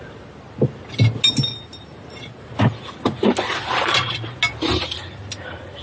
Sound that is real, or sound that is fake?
real